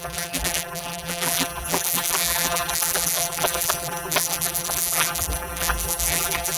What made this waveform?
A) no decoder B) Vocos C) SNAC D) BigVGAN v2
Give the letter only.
D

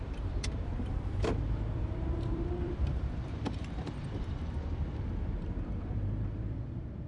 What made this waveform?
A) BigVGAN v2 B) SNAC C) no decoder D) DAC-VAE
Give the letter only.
A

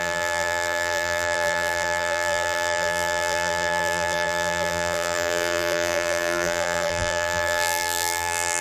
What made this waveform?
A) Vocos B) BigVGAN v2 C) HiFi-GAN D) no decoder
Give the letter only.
B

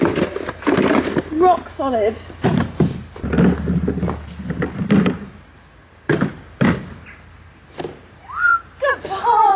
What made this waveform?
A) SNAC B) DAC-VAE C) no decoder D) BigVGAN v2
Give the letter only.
C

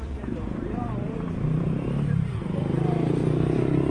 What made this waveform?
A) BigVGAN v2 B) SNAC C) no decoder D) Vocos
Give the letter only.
A